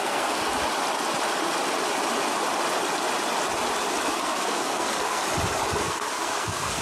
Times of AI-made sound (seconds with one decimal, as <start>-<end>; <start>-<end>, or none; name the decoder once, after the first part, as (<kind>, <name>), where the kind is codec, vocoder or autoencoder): 0.0-0.4 (codec, SNAC); 4.1-5.2; 5.8-6.8